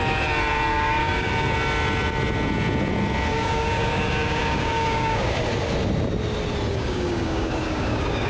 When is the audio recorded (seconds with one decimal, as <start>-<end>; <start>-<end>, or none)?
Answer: 0.0-0.7; 1.3-3.3; 5.4-6.7